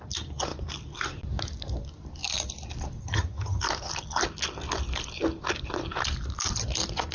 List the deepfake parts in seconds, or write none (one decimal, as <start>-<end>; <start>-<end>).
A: 3.0-3.6